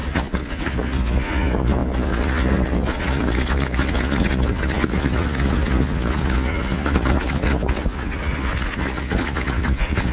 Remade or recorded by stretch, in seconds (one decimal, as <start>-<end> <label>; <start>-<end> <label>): 0.0-10.1 remade